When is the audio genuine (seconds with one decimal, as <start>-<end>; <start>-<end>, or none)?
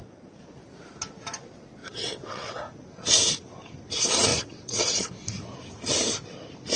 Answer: 0.0-1.8; 2.6-4.3; 5.1-6.8